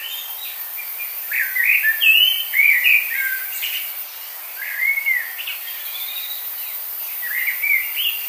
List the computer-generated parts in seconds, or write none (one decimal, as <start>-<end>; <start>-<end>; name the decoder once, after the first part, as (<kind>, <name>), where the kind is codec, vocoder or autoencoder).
2.3-3.9 (vocoder, BigVGAN v2)